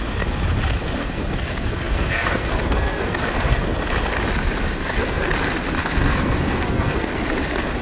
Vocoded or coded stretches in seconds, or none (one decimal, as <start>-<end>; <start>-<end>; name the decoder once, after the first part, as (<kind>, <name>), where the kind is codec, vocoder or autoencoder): 1.0-3.6 (codec, SNAC); 4.8-5.3; 5.8-7.1